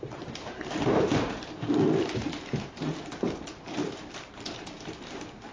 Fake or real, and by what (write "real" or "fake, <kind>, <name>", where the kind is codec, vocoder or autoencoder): fake, vocoder, BigVGAN v2